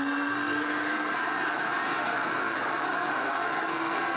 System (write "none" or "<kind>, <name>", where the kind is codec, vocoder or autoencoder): codec, SNAC